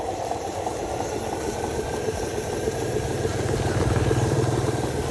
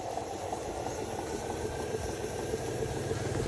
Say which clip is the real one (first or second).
second